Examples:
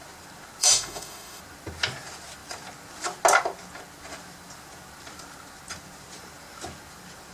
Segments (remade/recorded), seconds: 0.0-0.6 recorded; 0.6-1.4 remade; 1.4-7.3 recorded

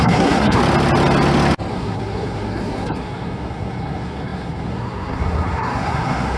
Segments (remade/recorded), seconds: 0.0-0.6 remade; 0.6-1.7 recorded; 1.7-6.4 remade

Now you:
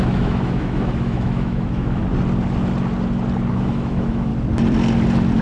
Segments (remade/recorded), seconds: 0.0-2.0 remade; 2.0-3.5 recorded; 3.5-4.3 remade; 4.3-5.4 recorded

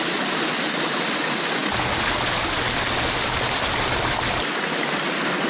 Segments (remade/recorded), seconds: 0.0-5.5 recorded